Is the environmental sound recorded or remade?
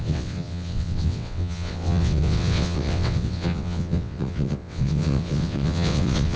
remade